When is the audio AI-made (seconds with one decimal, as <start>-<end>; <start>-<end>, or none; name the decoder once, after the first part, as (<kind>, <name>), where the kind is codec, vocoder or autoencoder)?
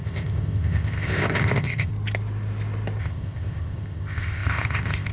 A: 0.0-1.9 (codec, ZipCodec); 3.0-5.1